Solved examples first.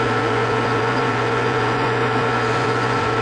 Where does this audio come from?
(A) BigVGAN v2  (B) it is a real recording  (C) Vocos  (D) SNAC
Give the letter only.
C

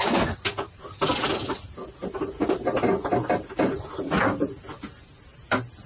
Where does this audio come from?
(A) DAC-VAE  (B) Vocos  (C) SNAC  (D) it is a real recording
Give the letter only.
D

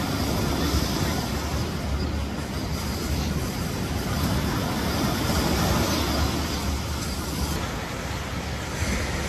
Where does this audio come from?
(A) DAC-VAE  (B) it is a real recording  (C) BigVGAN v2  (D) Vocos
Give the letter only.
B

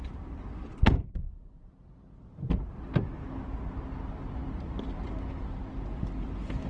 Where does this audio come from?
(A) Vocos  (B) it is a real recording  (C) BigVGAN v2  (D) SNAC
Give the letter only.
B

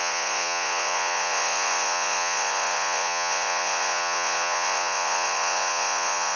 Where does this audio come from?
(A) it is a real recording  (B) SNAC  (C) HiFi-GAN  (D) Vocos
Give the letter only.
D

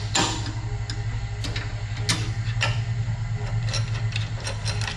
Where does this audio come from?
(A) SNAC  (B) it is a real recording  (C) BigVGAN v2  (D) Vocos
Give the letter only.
B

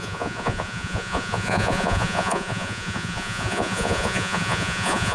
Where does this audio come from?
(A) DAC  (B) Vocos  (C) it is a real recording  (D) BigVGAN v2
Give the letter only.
B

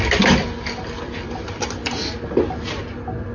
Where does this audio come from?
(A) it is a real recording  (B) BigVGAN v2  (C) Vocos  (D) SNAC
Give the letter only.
A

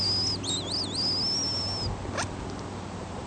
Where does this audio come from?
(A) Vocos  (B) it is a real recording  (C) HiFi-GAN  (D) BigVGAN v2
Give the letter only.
B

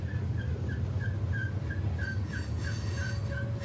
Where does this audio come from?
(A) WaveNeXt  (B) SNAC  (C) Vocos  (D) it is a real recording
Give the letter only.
D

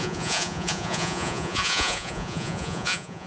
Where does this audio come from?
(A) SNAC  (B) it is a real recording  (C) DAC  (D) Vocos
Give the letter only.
D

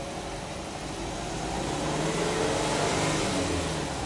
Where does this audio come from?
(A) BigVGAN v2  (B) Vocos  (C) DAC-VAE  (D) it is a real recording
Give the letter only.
D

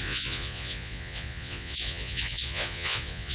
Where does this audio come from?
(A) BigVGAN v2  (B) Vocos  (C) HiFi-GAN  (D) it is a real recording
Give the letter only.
B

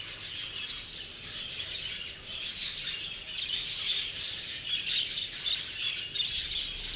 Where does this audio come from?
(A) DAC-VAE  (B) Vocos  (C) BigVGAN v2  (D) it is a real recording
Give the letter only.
D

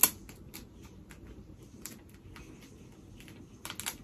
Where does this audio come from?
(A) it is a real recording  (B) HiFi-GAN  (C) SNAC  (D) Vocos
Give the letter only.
A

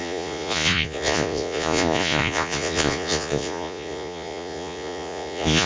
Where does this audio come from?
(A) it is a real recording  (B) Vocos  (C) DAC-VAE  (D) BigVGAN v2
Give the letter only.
B